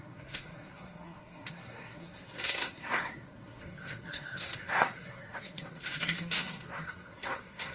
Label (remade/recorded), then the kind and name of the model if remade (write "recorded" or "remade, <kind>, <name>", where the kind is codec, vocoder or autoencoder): remade, codec, SNAC